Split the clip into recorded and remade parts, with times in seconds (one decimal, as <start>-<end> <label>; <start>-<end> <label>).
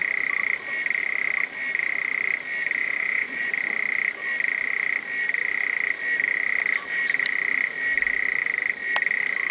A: 0.0-2.8 recorded; 2.8-3.5 remade; 3.5-9.5 recorded